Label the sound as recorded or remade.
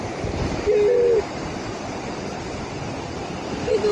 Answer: recorded